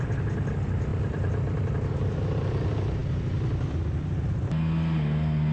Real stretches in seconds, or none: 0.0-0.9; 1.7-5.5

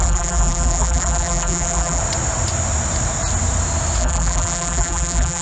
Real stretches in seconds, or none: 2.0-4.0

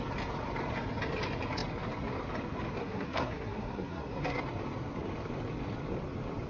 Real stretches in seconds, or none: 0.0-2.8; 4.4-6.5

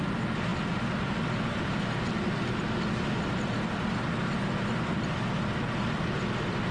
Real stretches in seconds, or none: 0.0-6.7